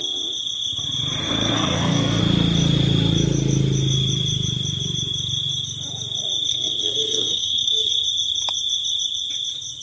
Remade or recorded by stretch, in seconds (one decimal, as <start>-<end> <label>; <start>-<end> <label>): 0.0-1.2 recorded; 1.2-2.2 remade; 2.2-6.5 recorded; 6.5-7.9 remade; 7.9-9.8 recorded